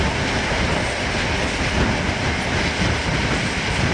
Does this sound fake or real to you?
real